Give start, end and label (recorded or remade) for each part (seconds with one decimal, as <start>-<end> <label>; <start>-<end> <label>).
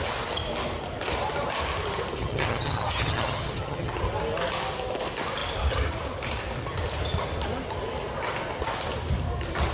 0.0-2.2 recorded; 2.2-3.9 remade; 3.9-9.7 recorded